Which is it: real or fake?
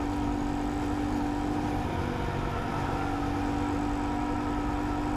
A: real